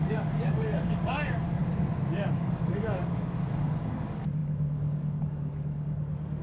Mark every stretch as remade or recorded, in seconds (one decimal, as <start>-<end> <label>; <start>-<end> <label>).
0.0-1.6 remade; 1.6-2.4 recorded; 2.4-6.4 remade